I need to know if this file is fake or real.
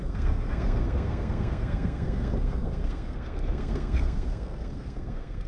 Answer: fake